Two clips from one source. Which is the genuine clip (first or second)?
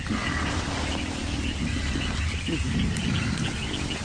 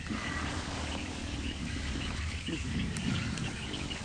first